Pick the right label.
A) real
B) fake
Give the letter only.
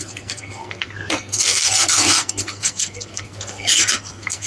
B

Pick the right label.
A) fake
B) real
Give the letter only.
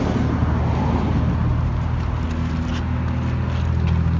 B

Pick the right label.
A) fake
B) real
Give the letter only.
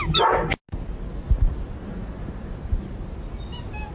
B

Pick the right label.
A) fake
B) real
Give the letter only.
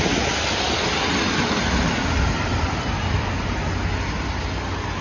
B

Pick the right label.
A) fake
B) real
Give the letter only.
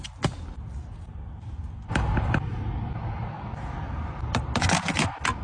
B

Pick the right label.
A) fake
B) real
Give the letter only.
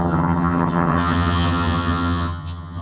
A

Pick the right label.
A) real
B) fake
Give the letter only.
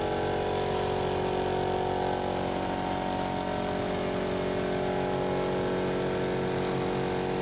A